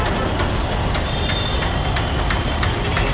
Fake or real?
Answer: real